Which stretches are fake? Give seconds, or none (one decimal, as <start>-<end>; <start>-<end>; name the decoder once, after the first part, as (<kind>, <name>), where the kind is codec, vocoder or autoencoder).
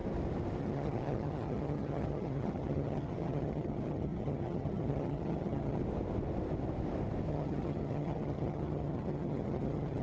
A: 0.6-5.8 (vocoder, HiFi-GAN); 7.3-10.0